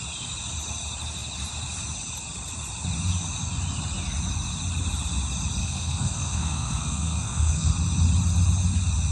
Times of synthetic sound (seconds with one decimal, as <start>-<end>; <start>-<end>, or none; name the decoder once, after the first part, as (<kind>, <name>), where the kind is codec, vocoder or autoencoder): 5.6-7.7 (codec, SNAC)